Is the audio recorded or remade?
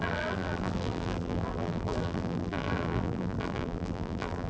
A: remade